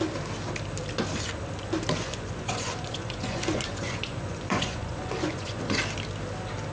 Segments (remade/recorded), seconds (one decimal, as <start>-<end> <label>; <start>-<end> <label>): 0.0-2.0 recorded; 2.0-5.8 remade; 5.8-6.7 recorded